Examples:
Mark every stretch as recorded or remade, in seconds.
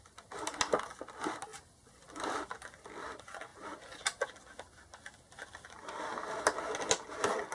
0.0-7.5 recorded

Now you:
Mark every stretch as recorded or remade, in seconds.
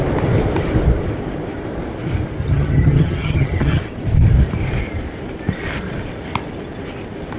0.0-2.4 recorded; 2.4-3.8 remade; 3.8-7.4 recorded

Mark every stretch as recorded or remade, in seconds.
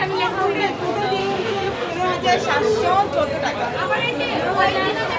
0.0-1.2 recorded; 1.2-1.9 remade; 1.9-5.2 recorded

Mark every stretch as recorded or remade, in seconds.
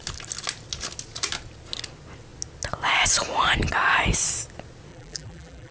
0.0-4.9 recorded; 4.9-5.7 remade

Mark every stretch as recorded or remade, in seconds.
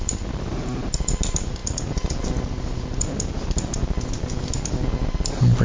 0.0-5.6 recorded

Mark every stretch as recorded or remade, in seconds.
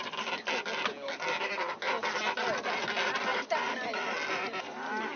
0.0-5.2 recorded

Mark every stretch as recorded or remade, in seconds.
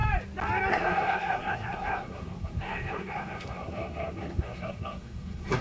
0.0-0.7 recorded; 0.7-5.6 remade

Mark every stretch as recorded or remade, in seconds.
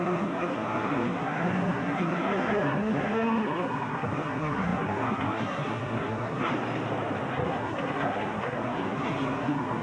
0.0-6.5 remade; 6.5-7.3 recorded; 7.3-9.8 remade